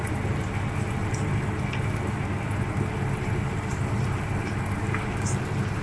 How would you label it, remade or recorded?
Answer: recorded